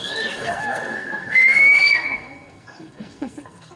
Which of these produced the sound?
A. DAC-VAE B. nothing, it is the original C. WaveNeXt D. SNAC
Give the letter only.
D